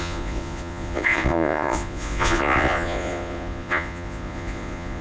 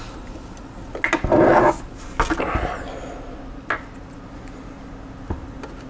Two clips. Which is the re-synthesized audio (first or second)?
first